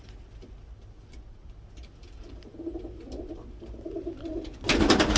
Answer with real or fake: real